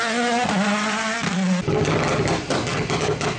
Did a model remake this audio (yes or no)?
no